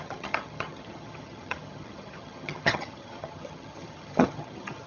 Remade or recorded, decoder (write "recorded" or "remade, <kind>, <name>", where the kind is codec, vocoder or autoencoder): remade, vocoder, HiFi-GAN